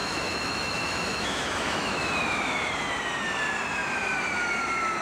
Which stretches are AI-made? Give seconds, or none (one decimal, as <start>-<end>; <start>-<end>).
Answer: 0.0-2.7